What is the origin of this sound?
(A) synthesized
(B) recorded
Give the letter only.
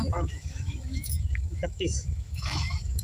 A